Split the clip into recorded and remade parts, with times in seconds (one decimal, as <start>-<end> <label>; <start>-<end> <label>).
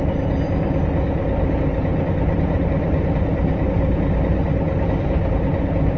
0.0-1.7 recorded; 1.7-5.1 remade; 5.1-6.0 recorded